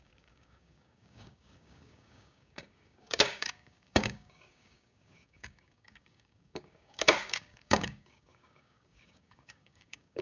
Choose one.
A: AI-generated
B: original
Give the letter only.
A